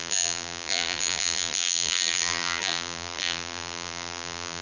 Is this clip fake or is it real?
fake